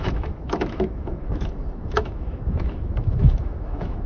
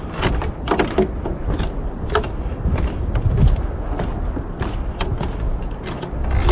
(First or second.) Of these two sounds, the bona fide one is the second